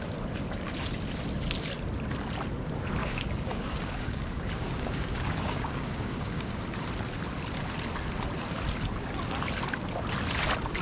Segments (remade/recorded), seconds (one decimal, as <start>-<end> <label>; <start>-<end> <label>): 0.0-3.0 recorded; 3.0-6.6 remade; 6.6-10.8 recorded